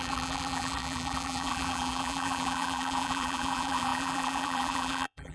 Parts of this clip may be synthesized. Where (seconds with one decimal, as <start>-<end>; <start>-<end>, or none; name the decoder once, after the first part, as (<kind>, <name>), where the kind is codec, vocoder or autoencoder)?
0.0-5.3 (vocoder, BigVGAN v2)